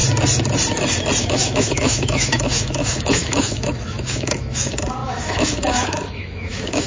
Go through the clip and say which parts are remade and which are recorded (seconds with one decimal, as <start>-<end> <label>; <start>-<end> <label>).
0.0-1.2 recorded; 1.2-6.9 remade